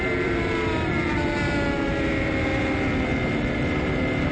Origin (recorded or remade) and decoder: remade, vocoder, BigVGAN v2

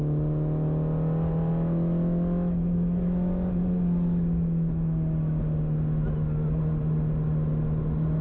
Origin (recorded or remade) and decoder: recorded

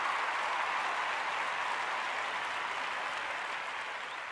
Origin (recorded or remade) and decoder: recorded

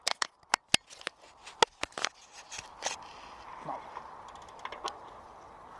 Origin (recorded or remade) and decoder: recorded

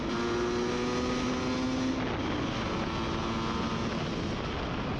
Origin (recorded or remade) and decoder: recorded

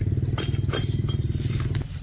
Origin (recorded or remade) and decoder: recorded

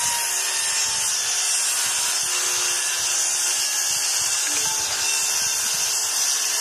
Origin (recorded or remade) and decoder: recorded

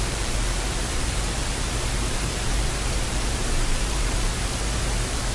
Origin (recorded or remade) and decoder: remade, vocoder, BigVGAN v2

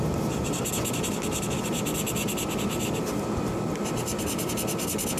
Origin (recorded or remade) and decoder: recorded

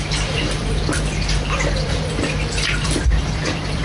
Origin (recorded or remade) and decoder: remade, vocoder, BigVGAN v2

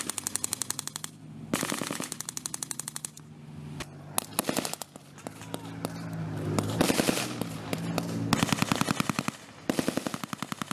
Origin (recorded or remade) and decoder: recorded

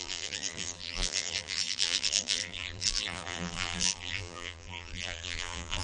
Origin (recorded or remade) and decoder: remade, vocoder, BigVGAN v2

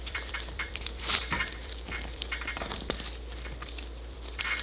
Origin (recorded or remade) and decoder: remade, vocoder, BigVGAN v2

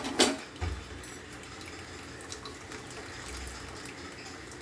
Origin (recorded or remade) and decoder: recorded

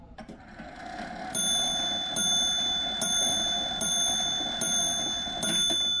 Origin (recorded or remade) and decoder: recorded